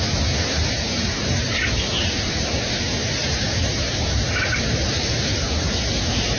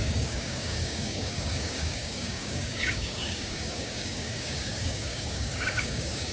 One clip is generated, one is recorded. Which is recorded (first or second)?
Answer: first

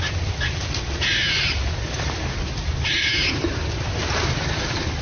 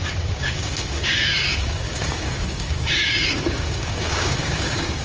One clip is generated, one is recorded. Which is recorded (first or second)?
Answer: first